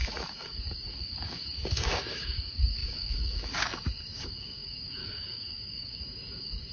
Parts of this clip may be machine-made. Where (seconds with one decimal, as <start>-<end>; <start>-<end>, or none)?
0.0-6.7

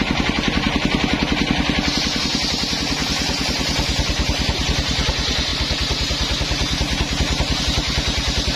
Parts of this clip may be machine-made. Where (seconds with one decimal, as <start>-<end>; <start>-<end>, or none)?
none

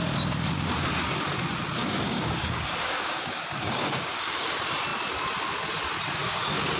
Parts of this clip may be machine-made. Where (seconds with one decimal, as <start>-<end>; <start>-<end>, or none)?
1.8-4.4

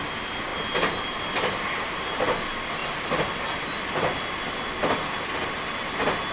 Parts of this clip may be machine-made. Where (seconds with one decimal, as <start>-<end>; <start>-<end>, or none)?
none

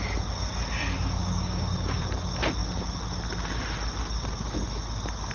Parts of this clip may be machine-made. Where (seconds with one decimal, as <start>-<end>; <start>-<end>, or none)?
1.2-2.0